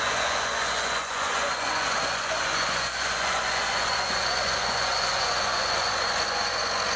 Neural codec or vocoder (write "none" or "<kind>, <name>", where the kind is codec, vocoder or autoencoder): vocoder, Vocos